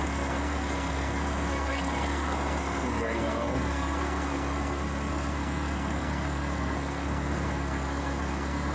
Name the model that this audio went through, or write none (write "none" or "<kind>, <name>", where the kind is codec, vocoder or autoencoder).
codec, SNAC